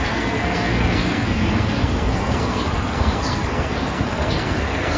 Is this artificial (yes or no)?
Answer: yes